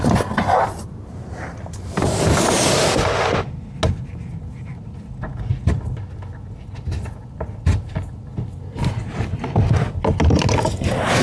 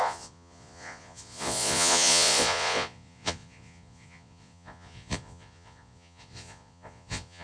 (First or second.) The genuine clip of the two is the first